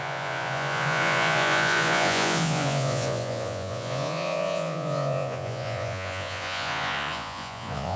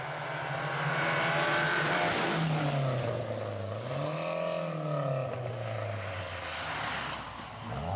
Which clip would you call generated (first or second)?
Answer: first